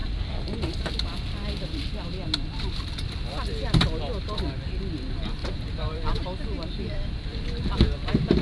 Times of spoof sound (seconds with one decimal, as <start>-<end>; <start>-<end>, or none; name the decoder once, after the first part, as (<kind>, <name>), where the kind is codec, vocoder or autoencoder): 5.4-6.2 (vocoder, BigVGAN v2)